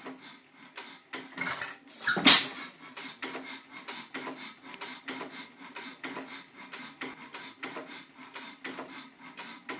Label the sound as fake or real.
real